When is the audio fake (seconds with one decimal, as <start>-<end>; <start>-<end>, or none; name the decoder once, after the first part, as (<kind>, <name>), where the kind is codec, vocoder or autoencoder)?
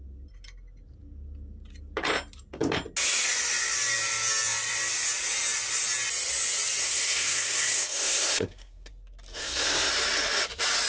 6.8-8.9 (codec, SNAC); 9.3-9.9